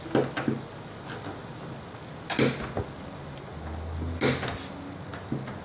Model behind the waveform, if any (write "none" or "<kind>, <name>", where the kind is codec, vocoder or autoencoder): none